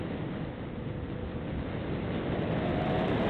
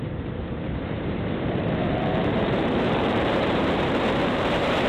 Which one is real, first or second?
first